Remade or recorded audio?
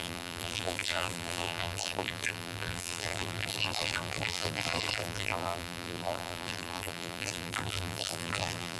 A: remade